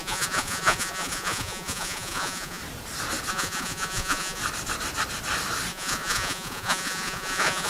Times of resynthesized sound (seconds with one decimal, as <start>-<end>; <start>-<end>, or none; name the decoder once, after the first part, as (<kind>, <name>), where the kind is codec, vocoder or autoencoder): 0.0-2.6 (vocoder, Vocos); 3.3-4.4; 5.7-7.7